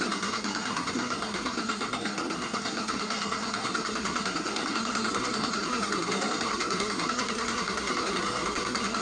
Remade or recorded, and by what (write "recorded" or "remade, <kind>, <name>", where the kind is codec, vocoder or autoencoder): remade, codec, SNAC